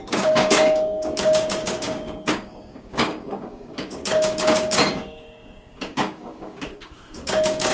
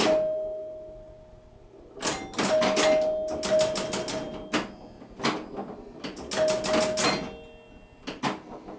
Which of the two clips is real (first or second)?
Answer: second